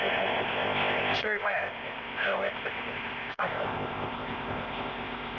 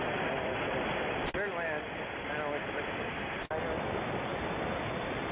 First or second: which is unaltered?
second